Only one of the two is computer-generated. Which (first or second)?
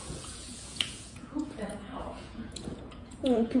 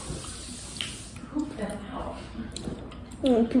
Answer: first